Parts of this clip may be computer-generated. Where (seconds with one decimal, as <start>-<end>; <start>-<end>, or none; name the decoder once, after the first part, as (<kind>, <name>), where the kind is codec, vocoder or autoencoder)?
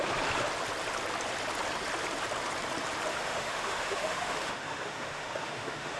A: 3.1-6.0 (autoencoder, DAC-VAE)